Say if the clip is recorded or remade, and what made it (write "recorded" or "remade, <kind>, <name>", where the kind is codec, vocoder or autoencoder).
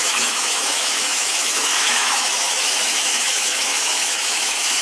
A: remade, autoencoder, DAC-VAE